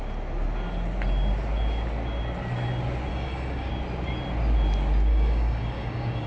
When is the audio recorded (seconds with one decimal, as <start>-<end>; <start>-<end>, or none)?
0.0-3.1; 3.7-5.1